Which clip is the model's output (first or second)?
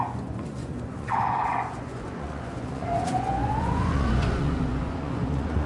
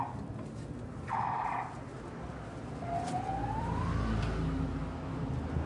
first